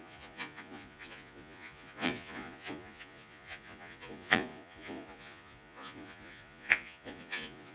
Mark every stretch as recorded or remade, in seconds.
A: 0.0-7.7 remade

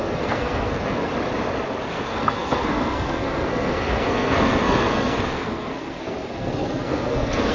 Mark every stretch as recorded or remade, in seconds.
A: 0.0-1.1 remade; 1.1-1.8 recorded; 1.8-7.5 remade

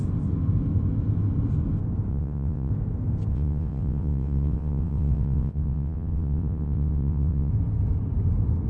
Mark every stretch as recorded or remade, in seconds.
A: 0.0-2.1 recorded; 2.1-2.7 remade; 2.7-3.3 recorded; 3.3-7.5 remade; 7.5-8.7 recorded

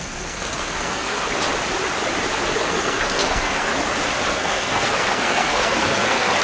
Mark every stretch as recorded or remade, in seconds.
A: 0.0-1.3 remade; 1.3-2.6 recorded; 2.6-3.7 remade; 3.7-4.3 recorded; 4.3-6.4 remade